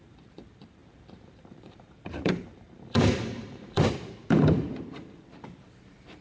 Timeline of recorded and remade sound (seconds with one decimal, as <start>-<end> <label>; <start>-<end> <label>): 0.0-6.2 remade